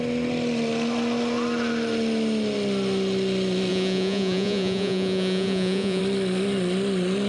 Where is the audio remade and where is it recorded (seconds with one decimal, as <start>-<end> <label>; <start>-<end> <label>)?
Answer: 0.0-3.7 recorded; 3.7-6.0 remade; 6.0-7.3 recorded